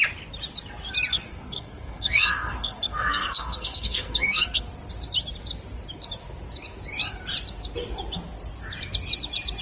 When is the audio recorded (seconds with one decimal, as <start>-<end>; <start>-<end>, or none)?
0.0-1.1; 4.6-9.6